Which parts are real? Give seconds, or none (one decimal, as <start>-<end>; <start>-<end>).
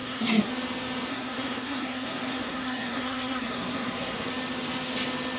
0.5-1.1; 4.3-5.4